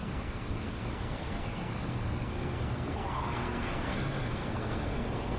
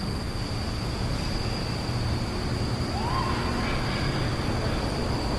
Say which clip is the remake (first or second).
first